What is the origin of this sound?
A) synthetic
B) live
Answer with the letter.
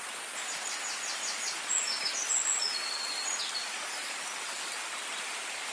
B